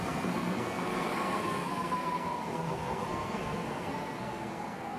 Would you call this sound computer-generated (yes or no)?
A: yes